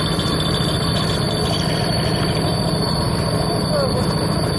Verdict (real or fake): real